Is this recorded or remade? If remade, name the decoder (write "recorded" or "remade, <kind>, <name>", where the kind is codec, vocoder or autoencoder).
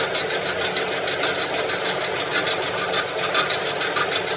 recorded